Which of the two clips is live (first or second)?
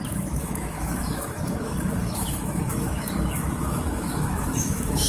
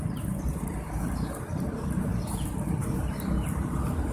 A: second